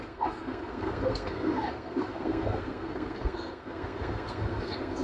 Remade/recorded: remade